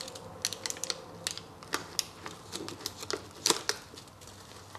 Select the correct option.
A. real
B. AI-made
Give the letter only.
A